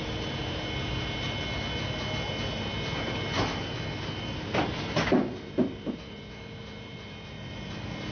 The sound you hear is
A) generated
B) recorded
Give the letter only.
B